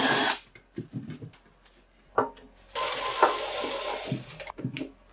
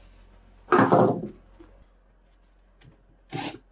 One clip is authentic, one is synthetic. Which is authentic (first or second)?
second